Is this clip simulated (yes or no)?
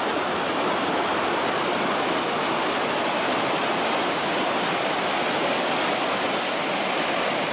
no